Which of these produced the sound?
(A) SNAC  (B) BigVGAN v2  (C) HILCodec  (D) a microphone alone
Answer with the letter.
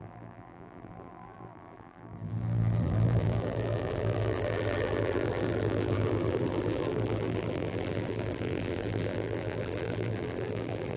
B